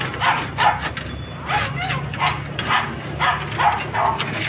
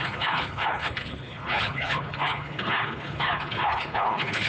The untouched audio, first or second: first